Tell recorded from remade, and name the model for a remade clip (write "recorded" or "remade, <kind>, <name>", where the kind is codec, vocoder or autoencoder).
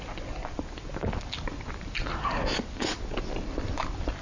recorded